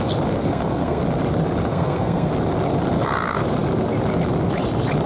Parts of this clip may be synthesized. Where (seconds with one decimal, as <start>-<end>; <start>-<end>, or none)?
0.5-1.0; 1.7-2.3

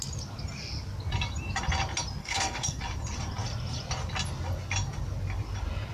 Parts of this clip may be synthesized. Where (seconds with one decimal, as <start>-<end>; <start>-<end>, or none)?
2.2-2.8